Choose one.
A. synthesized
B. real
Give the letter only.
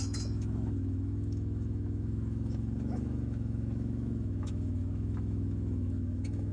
A